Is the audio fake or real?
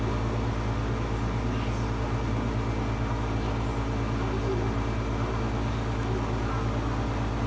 real